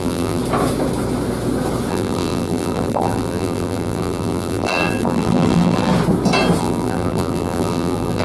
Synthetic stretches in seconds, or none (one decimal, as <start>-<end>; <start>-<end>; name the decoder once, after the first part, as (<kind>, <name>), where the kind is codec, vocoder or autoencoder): 0.0-0.4 (vocoder, BigVGAN v2); 1.9-5.9; 6.6-8.2